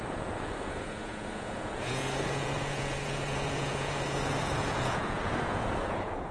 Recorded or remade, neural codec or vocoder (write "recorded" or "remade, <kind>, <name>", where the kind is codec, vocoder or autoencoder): remade, vocoder, Vocos